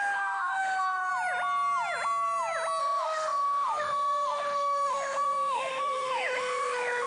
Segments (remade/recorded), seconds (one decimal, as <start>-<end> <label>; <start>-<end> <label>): 0.0-1.1 remade; 1.1-2.8 recorded; 2.8-7.1 remade